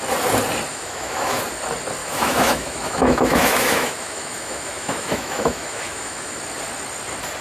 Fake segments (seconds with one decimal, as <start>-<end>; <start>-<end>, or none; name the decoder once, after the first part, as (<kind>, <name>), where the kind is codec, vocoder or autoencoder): 0.7-1.4 (autoencoder, DAC-VAE); 2.0-6.4

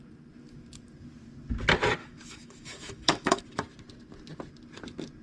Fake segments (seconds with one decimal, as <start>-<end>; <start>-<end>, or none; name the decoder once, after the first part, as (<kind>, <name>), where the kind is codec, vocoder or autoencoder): 2.0-3.4 (autoencoder, DAC-VAE)